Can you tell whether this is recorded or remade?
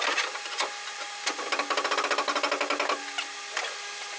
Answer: recorded